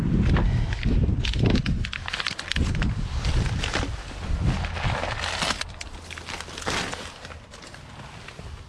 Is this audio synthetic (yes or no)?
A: no